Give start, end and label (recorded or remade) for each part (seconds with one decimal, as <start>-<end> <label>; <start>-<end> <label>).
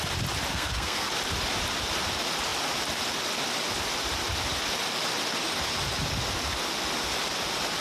0.0-0.5 recorded; 0.5-1.1 remade; 1.1-7.8 recorded